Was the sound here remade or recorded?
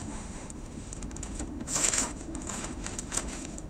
remade